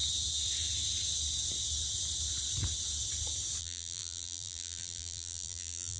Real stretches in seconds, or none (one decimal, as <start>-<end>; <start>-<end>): 0.0-3.6